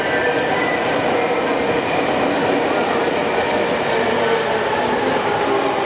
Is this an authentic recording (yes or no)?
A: yes